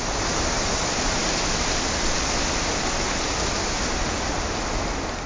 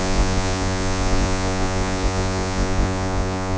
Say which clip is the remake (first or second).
second